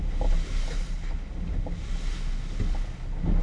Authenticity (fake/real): real